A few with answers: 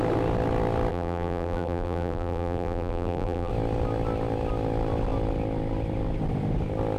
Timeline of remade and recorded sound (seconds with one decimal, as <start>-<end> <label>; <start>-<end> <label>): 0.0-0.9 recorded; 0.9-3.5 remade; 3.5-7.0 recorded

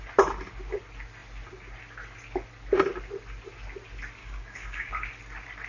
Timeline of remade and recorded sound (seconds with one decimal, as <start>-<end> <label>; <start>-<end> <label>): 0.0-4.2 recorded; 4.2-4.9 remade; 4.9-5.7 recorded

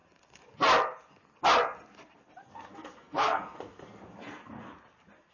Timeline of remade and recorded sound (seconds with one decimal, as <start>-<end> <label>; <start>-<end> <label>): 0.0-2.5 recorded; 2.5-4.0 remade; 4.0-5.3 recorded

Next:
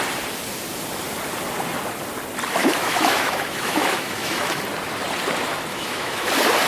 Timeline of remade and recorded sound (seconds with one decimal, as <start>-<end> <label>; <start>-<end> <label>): 0.0-2.6 recorded; 2.6-4.6 remade; 4.6-5.7 recorded; 5.7-6.3 remade; 6.3-6.7 recorded